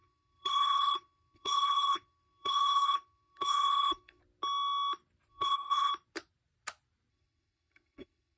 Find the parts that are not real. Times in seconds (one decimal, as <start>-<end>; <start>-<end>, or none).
0.0-4.2; 5.3-5.9; 7.1-8.4

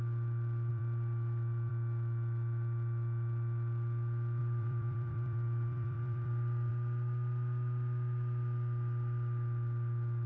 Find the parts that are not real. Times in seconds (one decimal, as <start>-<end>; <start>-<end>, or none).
0.7-1.7; 4.4-6.7

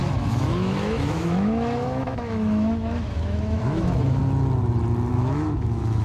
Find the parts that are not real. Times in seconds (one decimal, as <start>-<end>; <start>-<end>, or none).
0.0-4.2; 5.1-6.0

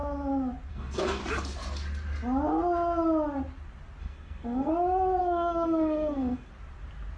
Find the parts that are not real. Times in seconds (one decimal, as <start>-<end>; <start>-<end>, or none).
0.7-1.2; 4.0-4.7; 5.2-6.5

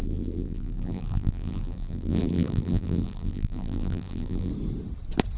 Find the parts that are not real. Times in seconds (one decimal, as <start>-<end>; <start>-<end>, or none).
0.0-4.5